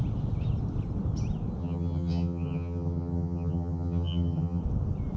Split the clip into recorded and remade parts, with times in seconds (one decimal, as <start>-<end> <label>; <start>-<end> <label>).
0.0-1.6 recorded; 1.6-4.6 remade; 4.6-5.2 recorded